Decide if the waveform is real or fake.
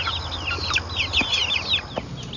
real